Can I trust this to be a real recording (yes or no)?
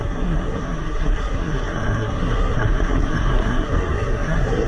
no